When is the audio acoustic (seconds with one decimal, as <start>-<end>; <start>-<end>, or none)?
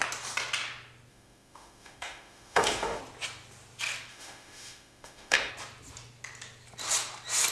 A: 0.0-1.1; 3.0-4.1; 5.5-7.5